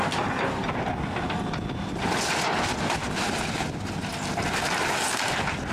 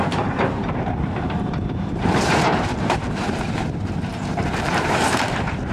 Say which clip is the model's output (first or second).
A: second